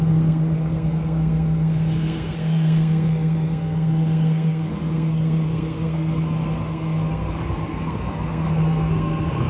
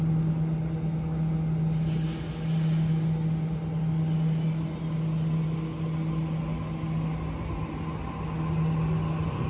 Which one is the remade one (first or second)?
first